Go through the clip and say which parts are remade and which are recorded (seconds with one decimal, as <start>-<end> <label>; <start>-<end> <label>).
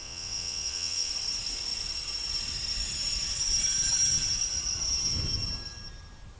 0.0-1.1 remade; 1.1-6.4 recorded